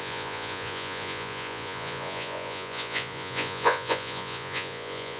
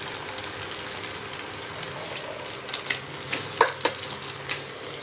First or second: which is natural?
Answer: second